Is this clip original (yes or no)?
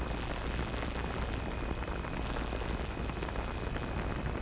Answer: yes